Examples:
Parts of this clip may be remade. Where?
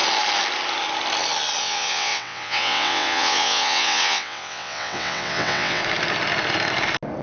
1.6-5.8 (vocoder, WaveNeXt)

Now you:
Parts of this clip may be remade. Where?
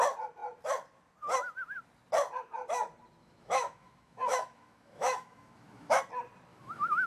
3.2-6.0 (autoencoder, DAC-VAE); 6.5-7.1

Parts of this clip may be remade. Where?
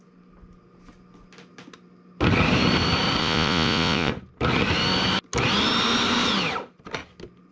3.2-4.1 (vocoder, Vocos)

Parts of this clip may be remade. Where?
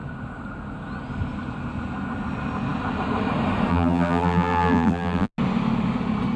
3.7-5.3 (vocoder, BigVGAN v2)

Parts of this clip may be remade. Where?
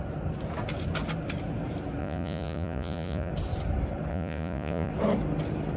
2.0-3.3 (vocoder, Vocos); 4.1-4.9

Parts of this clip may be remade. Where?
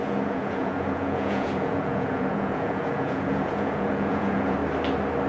0.0-4.6 (vocoder, Vocos)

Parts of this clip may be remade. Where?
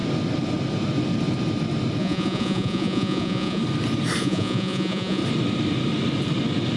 2.0-3.6 (vocoder, Vocos); 4.2-5.2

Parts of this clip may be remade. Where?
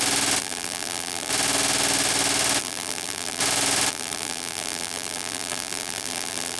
0.4-1.3 (vocoder, BigVGAN v2); 2.6-3.4; 3.9-6.6